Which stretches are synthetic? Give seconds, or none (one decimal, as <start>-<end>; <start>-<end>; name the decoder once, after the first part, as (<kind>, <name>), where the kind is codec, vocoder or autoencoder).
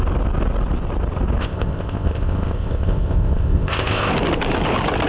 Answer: 1.4-4.1 (codec, ZipCodec)